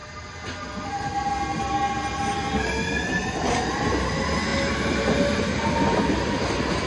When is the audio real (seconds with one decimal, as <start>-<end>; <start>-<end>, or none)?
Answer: 0.0-6.9